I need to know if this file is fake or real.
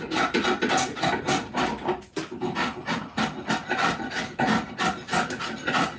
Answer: real